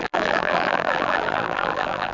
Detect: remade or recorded remade